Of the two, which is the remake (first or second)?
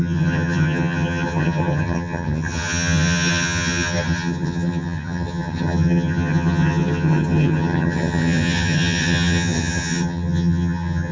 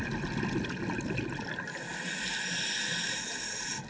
first